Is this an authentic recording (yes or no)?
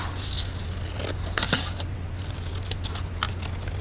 yes